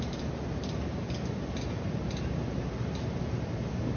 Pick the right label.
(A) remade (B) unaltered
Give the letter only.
B